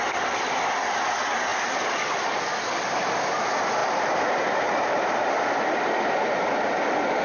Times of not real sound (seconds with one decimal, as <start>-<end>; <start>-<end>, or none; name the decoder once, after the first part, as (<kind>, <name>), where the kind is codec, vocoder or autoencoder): 1.5-2.0 (vocoder, BigVGAN v2); 3.8-6.8